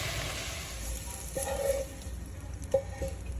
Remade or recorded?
recorded